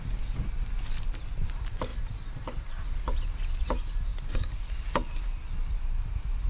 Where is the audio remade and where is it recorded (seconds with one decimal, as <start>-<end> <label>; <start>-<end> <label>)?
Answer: 0.0-6.5 recorded